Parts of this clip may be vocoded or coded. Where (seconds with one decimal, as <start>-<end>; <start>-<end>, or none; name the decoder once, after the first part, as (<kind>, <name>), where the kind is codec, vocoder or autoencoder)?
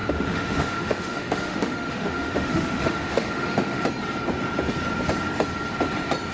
0.0-3.8 (autoencoder, DAC-VAE)